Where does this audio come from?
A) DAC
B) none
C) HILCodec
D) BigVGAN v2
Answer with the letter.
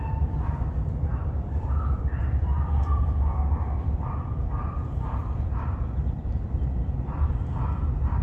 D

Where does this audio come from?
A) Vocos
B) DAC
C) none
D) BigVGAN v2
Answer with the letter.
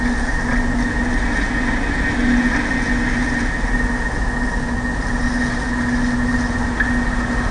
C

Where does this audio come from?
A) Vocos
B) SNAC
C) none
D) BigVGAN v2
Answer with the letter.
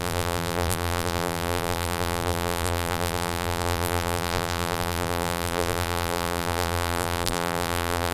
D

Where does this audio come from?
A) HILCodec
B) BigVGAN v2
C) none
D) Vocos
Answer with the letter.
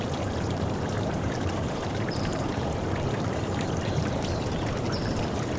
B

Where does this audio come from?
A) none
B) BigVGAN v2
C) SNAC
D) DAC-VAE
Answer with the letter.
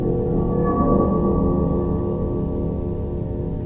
A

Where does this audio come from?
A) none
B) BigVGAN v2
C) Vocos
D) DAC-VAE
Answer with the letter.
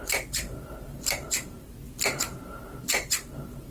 B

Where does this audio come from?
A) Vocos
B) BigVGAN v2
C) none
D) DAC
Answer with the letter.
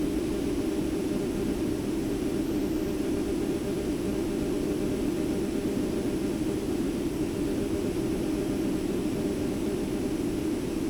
C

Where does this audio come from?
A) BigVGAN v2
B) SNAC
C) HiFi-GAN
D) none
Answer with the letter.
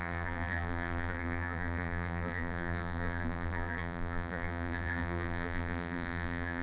A